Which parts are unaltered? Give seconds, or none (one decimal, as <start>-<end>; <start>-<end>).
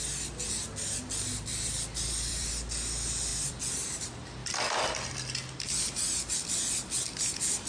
0.0-1.5; 2.5-3.3; 4.0-4.4; 5.0-7.7